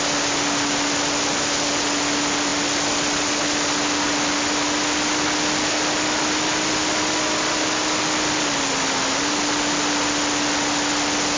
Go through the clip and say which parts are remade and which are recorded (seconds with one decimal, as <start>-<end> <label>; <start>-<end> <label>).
0.0-11.4 recorded